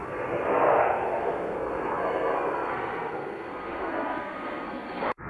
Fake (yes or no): yes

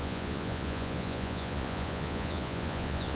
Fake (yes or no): yes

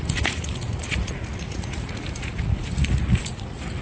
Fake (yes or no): yes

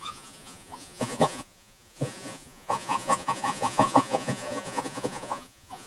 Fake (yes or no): yes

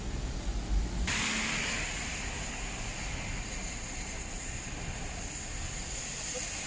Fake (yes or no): no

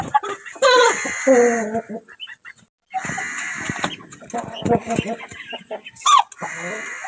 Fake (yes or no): no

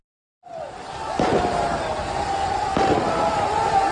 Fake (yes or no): no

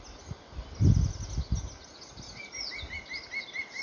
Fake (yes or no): no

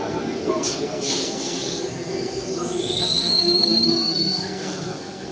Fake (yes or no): yes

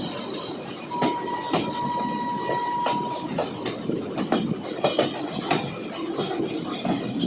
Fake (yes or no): no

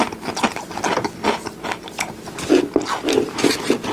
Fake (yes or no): no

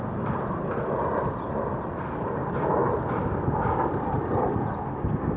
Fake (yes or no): no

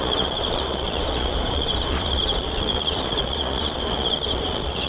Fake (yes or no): yes